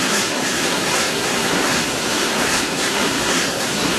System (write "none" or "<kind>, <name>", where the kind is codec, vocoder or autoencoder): codec, SNAC